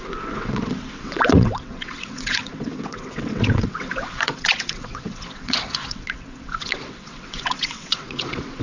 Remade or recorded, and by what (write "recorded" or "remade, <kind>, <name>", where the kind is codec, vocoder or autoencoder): remade, vocoder, WaveNeXt